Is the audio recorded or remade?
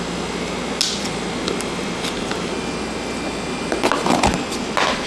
recorded